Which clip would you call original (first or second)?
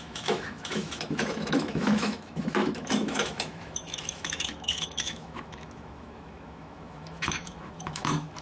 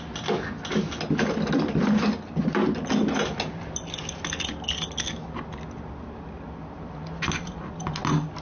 second